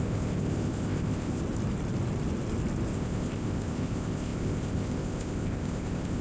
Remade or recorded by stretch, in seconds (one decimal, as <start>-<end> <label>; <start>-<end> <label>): 0.0-1.4 remade; 1.4-2.9 recorded; 2.9-6.2 remade